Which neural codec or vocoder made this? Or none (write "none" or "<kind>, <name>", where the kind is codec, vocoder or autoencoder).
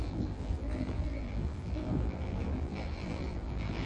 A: vocoder, BigVGAN v2